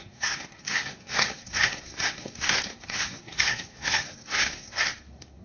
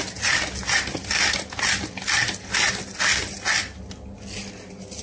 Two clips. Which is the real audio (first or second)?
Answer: second